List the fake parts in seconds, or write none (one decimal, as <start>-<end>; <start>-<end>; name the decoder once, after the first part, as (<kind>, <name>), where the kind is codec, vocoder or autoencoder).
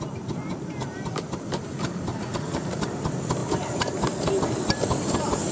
2.1-2.8 (vocoder, Vocos)